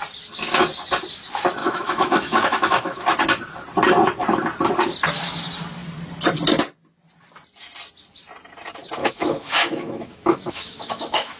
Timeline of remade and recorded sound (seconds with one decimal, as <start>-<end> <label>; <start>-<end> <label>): 0.0-1.6 recorded; 1.6-3.0 remade; 3.0-9.0 recorded; 9.0-11.4 remade